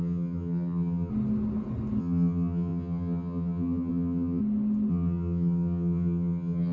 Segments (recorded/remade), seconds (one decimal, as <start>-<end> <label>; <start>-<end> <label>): 0.0-1.1 remade; 1.1-2.0 recorded; 2.0-4.4 remade; 4.4-4.9 recorded; 4.9-6.7 remade